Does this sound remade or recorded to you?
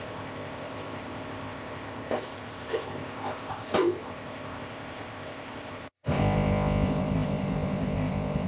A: remade